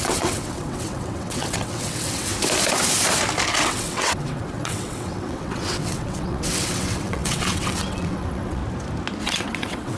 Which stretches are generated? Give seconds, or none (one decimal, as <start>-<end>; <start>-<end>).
0.0-2.3; 3.6-8.6; 9.2-10.0